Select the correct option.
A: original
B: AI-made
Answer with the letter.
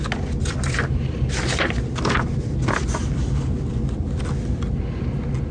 A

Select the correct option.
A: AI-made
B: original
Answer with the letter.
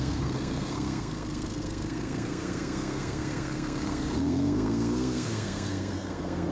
A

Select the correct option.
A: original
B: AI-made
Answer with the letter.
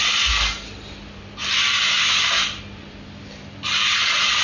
A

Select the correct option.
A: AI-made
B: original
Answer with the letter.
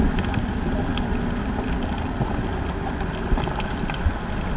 B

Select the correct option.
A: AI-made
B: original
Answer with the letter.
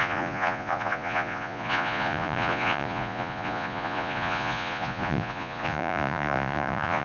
A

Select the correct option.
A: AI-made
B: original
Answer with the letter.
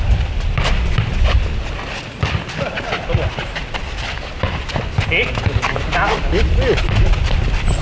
B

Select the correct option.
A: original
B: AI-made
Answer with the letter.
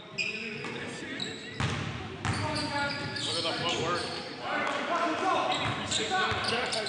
A